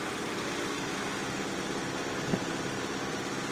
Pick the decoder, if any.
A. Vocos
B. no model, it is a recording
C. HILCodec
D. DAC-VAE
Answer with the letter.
B